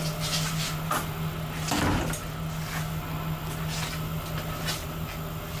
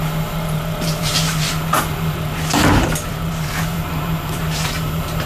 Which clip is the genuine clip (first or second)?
first